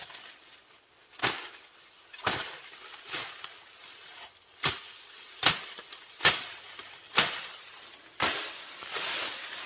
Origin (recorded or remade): recorded